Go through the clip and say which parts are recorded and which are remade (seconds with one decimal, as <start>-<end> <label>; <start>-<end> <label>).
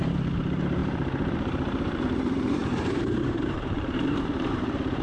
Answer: 0.0-5.0 remade